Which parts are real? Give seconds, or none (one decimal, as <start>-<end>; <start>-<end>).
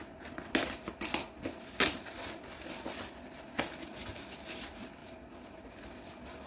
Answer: 0.0-6.5